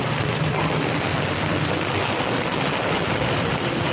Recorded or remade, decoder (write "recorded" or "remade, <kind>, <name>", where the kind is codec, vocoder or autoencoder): recorded